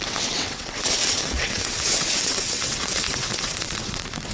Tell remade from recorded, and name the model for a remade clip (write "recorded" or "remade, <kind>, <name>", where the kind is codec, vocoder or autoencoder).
remade, vocoder, WaveNeXt